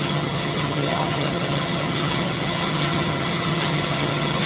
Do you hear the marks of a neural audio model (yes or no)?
yes